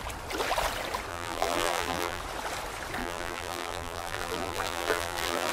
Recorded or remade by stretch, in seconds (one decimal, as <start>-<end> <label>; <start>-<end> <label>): 0.0-1.1 recorded; 1.1-2.2 remade; 2.2-3.0 recorded; 3.0-5.5 remade